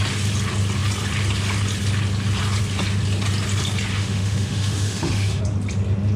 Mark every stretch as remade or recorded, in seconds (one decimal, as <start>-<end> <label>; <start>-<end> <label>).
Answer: 0.0-3.9 recorded; 3.9-5.4 remade; 5.4-6.2 recorded